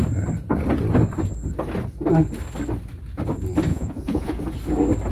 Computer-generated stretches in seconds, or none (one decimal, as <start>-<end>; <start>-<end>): 3.7-4.4